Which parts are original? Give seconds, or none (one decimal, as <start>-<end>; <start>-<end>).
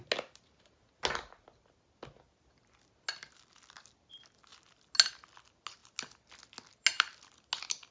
0.0-7.9